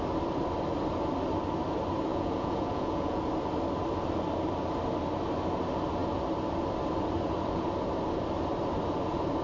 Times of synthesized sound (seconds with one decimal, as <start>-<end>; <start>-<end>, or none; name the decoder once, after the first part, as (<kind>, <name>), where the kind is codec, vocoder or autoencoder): 2.1-3.2 (vocoder, Vocos)